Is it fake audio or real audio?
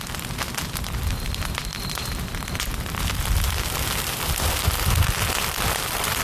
real